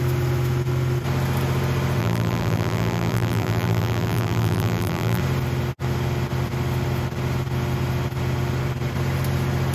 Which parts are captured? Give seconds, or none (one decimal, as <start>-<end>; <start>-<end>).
0.0-2.0; 5.2-9.7